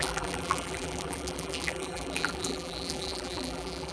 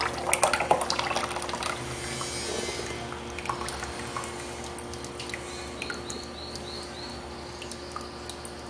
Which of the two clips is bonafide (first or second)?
second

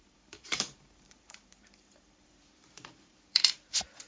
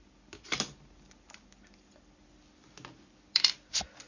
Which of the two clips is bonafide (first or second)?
second